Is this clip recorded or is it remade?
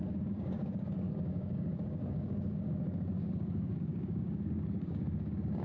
remade